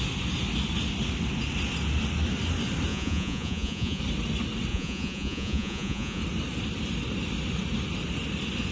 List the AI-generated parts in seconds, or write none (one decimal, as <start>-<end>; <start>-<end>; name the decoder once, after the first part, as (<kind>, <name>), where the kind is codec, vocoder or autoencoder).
2.9-4.0 (vocoder, Vocos); 4.7-6.2

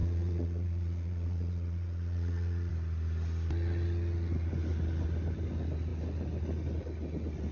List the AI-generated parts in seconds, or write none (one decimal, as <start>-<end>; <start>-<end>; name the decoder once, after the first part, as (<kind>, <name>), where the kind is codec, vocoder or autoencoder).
0.0-2.7 (vocoder, Vocos)

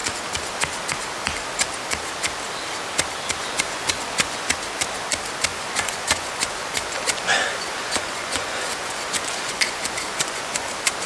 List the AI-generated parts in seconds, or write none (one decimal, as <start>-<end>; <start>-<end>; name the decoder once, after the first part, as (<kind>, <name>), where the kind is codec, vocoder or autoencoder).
3.4-4.5 (vocoder, Vocos); 5.5-10.7

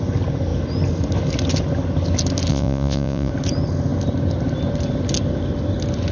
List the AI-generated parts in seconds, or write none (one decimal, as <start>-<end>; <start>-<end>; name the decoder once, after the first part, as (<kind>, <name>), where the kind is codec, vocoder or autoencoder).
2.5-3.3 (vocoder, Vocos)

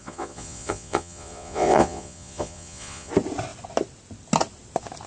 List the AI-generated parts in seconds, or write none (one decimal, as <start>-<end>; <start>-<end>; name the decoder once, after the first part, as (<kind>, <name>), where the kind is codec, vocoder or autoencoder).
0.0-3.1 (vocoder, Vocos)

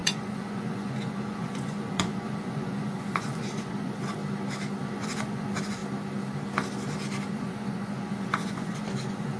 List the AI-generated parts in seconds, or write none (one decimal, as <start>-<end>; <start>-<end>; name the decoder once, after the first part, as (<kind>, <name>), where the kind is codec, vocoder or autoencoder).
0.0-4.2 (vocoder, Vocos); 4.9-5.8; 7.3-9.4

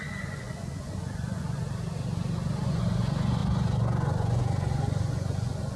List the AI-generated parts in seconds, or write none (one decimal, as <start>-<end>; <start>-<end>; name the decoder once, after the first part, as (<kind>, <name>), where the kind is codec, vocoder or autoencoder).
0.0-1.6 (vocoder, Vocos); 2.6-5.8